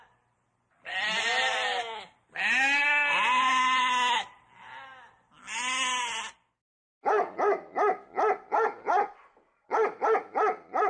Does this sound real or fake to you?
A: real